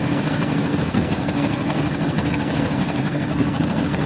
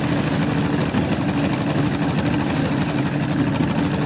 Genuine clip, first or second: second